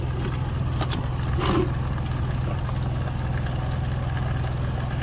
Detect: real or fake real